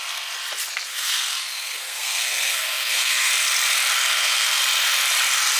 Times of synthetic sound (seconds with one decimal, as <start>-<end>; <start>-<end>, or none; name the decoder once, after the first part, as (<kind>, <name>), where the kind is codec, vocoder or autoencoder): 0.9-3.3 (codec, SNAC); 4.1-4.6